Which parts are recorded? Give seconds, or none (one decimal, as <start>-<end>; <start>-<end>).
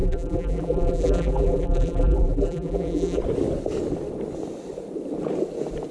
3.2-5.9